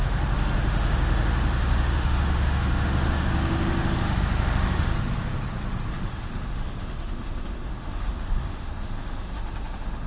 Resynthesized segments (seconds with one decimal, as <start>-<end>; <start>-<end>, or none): 0.0-4.9; 5.9-10.1

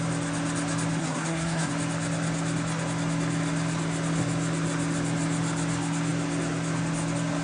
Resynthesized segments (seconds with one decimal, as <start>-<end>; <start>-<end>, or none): 1.0-1.7

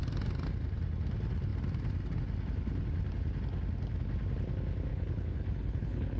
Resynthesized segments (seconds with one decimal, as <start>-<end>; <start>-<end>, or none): 4.9-6.2

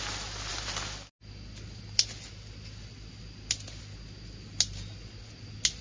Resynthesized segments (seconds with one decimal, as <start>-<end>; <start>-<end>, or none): none